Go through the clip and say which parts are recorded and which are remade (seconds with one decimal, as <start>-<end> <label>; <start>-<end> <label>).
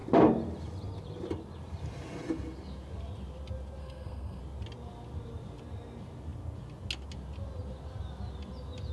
0.0-3.8 recorded; 3.8-4.4 remade; 4.4-8.9 recorded